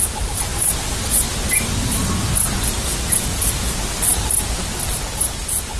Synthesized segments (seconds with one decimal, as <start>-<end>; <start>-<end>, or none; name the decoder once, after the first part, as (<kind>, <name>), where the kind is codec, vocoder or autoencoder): none